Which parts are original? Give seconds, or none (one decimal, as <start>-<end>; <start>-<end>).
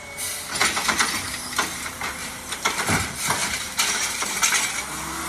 0.0-2.2; 2.8-3.4; 4.4-5.3